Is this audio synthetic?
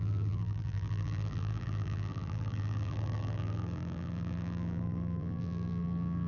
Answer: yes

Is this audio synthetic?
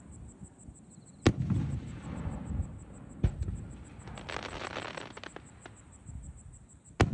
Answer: no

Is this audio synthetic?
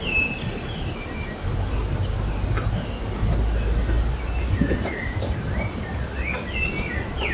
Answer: no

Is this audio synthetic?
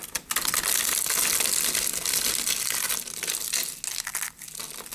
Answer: no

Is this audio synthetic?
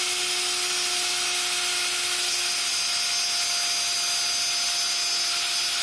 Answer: no